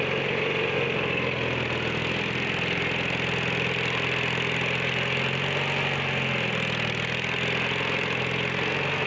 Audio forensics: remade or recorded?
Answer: recorded